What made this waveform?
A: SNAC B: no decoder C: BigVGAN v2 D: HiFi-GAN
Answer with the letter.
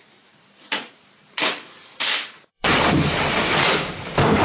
C